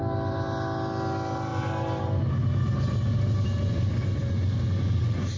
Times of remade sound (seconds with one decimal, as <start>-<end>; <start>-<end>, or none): none